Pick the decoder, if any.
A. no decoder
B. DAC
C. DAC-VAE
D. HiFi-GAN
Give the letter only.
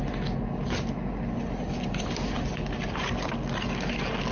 A